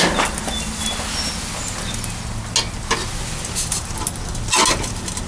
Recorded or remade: recorded